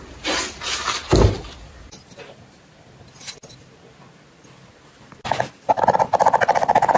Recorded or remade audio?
recorded